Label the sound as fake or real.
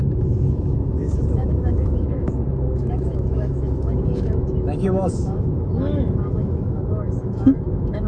fake